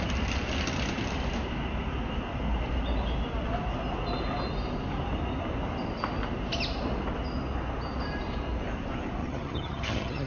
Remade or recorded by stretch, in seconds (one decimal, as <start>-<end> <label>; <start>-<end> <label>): 0.0-9.2 recorded; 9.2-10.3 remade